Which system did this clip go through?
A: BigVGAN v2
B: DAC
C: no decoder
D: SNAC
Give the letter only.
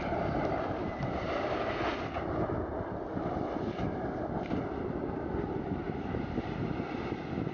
C